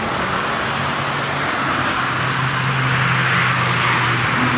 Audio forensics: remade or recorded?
recorded